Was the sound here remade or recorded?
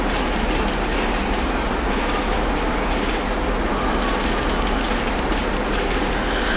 recorded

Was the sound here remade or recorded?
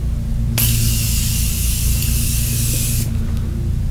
recorded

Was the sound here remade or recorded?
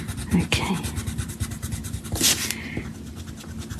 recorded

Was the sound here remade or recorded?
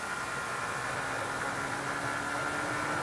recorded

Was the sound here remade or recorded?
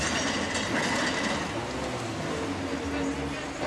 recorded